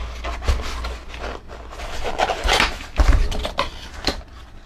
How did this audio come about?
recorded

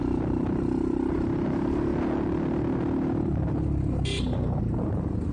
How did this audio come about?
recorded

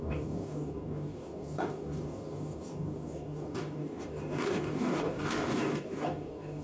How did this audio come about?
remade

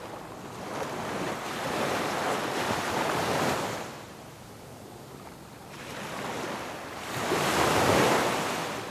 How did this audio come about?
remade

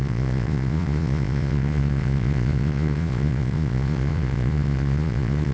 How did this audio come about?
remade